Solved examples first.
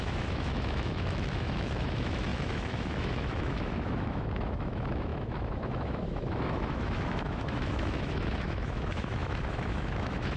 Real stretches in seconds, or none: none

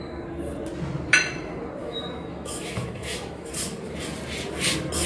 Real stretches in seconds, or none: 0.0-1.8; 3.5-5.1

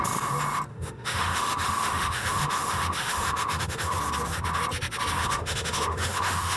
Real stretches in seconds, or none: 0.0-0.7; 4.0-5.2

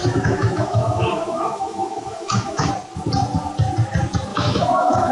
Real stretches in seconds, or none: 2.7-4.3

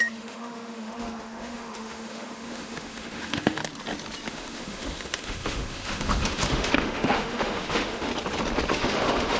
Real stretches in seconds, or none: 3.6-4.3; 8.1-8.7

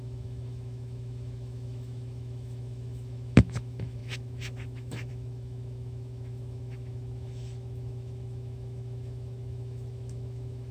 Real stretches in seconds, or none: none

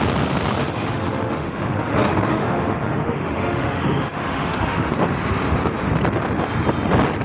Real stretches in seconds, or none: 0.0-0.6; 4.9-7.2